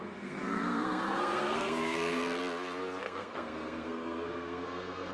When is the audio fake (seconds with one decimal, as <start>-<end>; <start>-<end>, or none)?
0.0-2.4; 3.0-5.1